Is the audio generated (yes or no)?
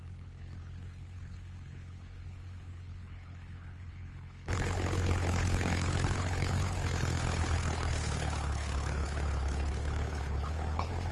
yes